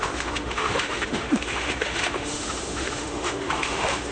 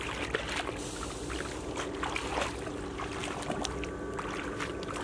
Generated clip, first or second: first